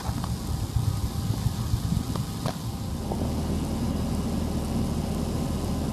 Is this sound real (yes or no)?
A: yes